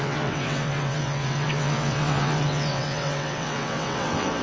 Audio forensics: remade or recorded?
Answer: remade